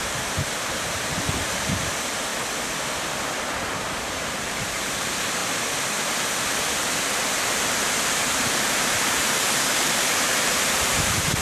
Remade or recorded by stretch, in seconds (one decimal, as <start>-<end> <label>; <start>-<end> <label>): 0.0-2.3 remade; 2.3-4.0 recorded; 4.0-5.4 remade; 5.4-7.7 recorded; 7.7-11.4 remade